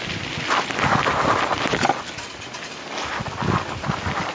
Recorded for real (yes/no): yes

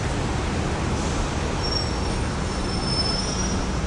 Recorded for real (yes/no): yes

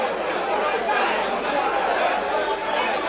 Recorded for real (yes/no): yes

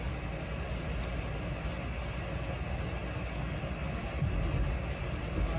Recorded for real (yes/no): yes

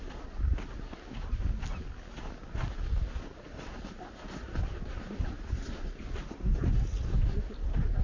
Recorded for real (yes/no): yes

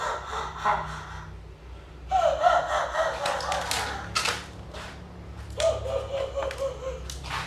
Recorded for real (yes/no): yes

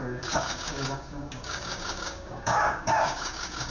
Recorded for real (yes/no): no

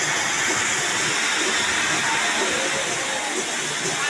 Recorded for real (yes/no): yes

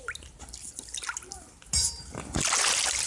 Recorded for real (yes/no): yes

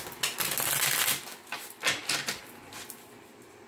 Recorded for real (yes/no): yes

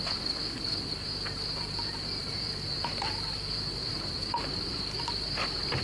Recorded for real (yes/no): no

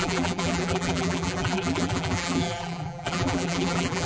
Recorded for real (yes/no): no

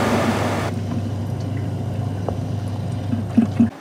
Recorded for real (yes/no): yes